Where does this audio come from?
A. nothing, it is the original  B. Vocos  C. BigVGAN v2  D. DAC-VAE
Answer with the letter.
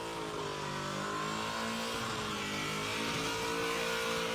A